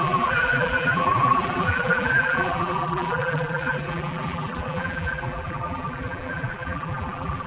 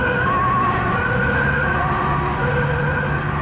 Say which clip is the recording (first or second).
second